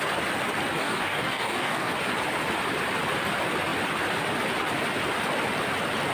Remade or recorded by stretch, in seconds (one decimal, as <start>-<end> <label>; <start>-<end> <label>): 0.0-0.8 recorded; 0.8-1.9 remade; 1.9-6.1 recorded